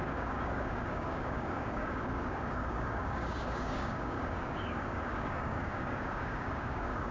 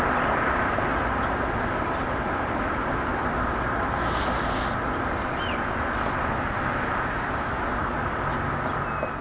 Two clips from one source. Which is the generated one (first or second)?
first